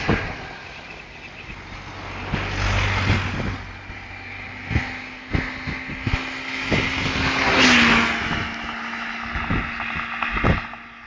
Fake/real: real